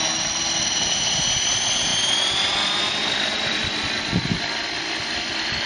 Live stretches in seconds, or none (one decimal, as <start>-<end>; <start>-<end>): 0.0-5.7

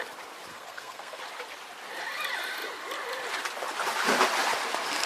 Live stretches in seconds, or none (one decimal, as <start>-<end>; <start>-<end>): 0.0-0.5; 1.2-5.1